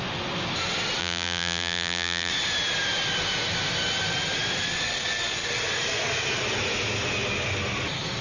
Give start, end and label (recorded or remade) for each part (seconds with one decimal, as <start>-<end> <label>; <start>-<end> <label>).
0.0-1.0 recorded; 1.0-2.3 remade; 2.3-8.2 recorded

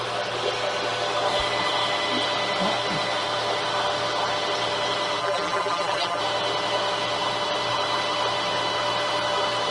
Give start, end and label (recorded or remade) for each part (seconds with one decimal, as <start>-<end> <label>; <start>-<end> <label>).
0.0-5.2 recorded; 5.2-6.2 remade; 6.2-9.7 recorded

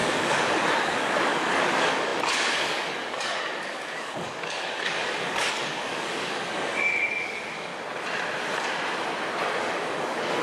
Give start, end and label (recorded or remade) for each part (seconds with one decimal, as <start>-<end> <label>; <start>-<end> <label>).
0.0-7.7 remade; 7.7-9.6 recorded; 9.6-10.4 remade

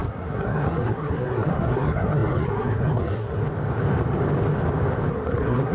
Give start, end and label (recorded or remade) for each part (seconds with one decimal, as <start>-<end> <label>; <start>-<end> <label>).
0.0-3.4 remade; 3.4-5.1 recorded; 5.1-5.7 remade

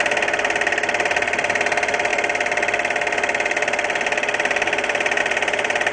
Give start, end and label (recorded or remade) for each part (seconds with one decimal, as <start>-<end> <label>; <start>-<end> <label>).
0.0-5.9 recorded